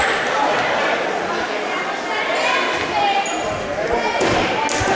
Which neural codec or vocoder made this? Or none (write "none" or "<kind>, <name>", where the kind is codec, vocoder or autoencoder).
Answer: none